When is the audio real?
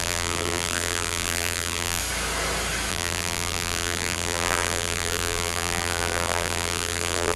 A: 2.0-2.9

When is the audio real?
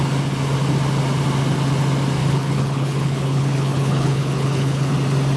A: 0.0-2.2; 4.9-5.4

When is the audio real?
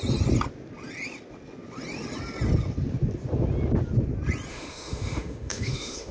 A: 0.0-4.5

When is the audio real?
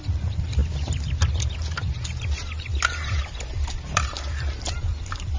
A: 0.6-3.8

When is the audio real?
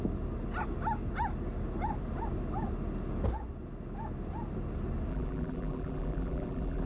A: 0.0-5.1